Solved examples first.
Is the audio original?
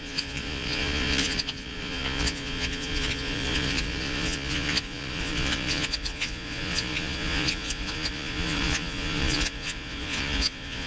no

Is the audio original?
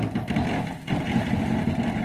yes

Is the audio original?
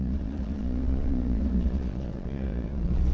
no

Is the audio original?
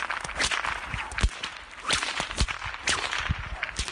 yes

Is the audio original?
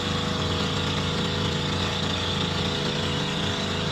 yes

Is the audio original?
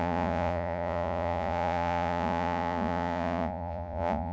no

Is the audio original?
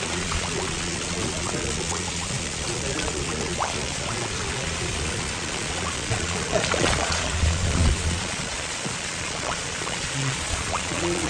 no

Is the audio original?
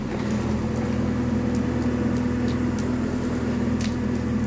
yes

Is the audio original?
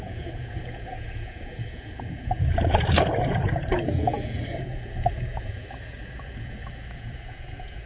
no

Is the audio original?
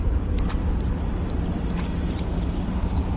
yes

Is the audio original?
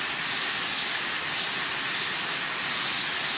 yes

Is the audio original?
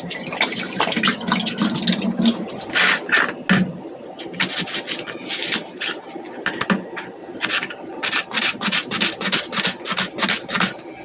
yes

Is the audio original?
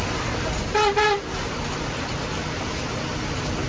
yes